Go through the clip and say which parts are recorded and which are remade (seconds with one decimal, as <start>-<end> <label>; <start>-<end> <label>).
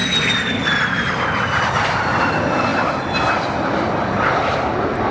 0.0-5.1 recorded